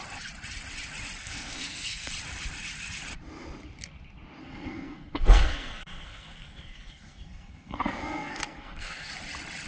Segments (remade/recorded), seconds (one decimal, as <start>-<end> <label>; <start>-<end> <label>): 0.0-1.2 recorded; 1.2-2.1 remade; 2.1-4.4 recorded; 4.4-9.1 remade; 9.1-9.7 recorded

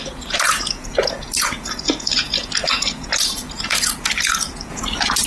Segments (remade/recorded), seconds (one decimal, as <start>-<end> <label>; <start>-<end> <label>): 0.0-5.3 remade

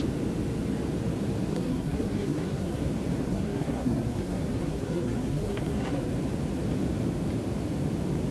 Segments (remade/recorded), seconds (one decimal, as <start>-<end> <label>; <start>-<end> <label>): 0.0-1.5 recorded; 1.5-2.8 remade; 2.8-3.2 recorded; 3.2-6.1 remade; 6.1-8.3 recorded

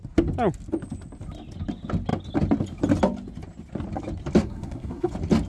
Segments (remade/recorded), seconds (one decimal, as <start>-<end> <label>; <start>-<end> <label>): 0.0-4.4 recorded; 4.4-5.1 remade; 5.1-5.5 recorded

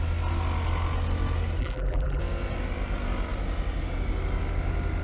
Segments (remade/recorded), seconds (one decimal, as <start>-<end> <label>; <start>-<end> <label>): 0.0-1.6 recorded; 1.6-2.2 remade; 2.2-5.0 recorded

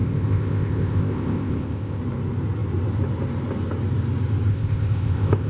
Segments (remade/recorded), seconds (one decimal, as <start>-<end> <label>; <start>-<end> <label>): 0.0-2.0 remade; 2.0-4.5 recorded; 4.5-5.5 remade

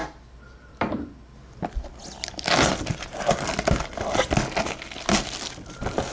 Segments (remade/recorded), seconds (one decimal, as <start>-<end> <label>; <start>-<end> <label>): 0.0-6.1 recorded